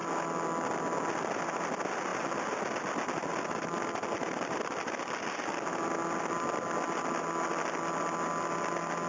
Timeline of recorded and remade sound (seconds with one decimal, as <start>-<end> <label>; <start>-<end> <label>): 0.0-9.1 recorded